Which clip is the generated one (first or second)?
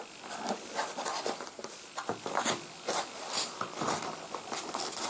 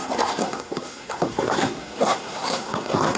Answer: second